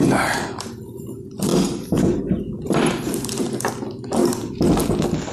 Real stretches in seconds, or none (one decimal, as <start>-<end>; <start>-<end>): 0.0-1.5; 2.2-4.2; 4.7-5.3

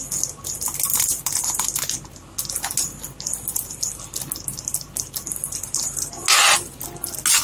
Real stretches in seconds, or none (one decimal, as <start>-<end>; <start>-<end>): 0.0-5.4; 6.1-7.4